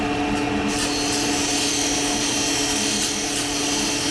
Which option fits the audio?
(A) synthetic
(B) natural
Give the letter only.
B